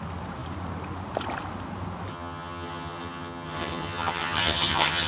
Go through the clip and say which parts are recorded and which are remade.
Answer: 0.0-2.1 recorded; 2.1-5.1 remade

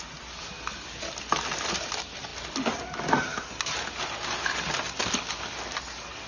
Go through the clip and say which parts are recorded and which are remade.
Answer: 0.0-6.3 recorded

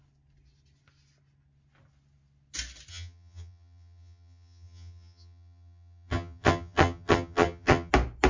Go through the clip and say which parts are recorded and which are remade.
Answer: 0.0-2.9 recorded; 2.9-7.9 remade; 7.9-8.3 recorded

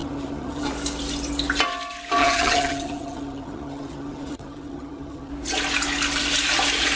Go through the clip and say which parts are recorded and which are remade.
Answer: 0.0-0.7 remade; 0.7-2.2 recorded; 2.2-5.3 remade; 5.3-7.0 recorded

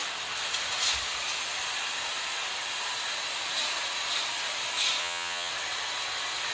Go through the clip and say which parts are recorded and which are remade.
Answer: 0.0-5.0 recorded; 5.0-5.5 remade; 5.5-6.5 recorded